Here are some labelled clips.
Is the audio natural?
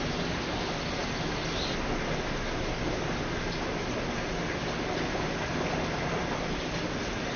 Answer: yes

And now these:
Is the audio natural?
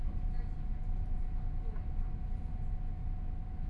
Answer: yes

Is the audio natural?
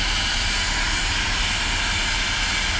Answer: yes